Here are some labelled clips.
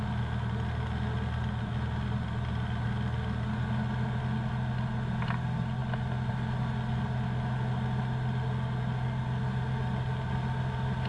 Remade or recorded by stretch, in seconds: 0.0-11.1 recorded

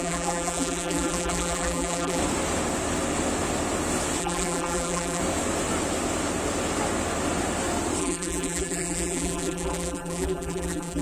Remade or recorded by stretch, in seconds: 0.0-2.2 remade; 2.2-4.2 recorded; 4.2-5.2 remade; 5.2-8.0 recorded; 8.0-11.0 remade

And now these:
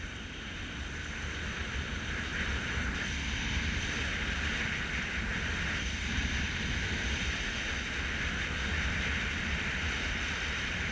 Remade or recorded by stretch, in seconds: 0.0-1.6 remade; 1.6-2.8 recorded; 2.8-4.1 remade; 4.1-8.9 recorded; 8.9-10.9 remade